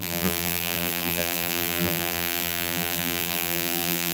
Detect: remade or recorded remade